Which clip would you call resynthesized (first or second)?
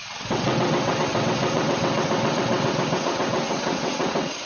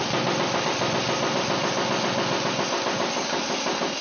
first